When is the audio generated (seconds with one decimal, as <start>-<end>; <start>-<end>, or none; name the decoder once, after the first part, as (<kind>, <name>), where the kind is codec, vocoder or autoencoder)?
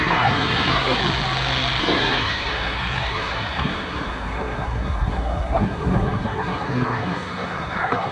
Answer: 0.0-1.0 (codec, SNAC); 1.8-8.1